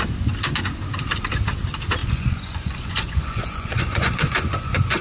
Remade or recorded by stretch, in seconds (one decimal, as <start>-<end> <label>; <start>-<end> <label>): 0.0-2.0 recorded; 2.0-5.0 remade